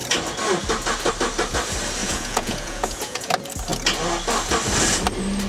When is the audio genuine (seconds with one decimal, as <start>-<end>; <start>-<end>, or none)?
0.0-2.0; 3.3-5.5